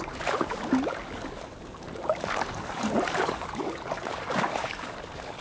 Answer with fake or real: fake